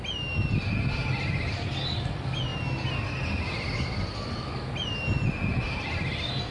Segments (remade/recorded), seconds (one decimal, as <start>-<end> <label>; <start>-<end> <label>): 0.0-6.5 recorded